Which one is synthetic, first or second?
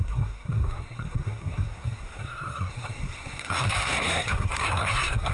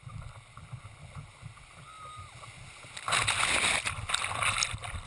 first